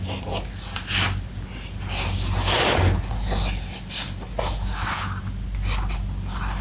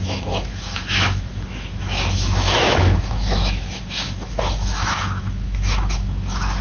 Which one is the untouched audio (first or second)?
first